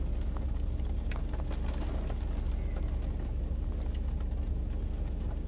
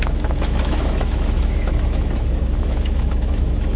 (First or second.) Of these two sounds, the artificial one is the second